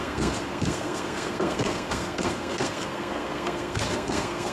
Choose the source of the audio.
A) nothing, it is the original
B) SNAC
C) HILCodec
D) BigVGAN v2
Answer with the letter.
B